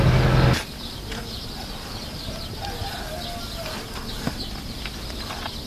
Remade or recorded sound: recorded